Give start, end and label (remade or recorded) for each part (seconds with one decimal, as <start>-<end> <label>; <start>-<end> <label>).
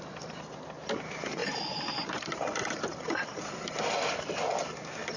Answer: 0.0-1.4 recorded; 1.4-4.2 remade; 4.2-5.2 recorded